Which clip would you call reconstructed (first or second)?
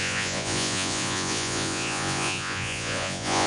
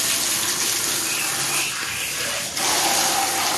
first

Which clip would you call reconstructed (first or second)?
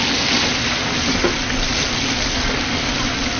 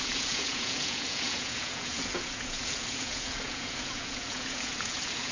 second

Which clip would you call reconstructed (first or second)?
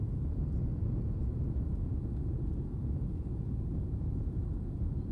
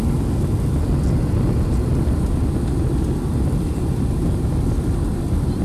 first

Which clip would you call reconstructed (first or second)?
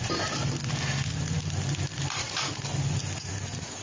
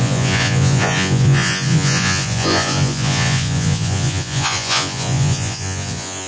second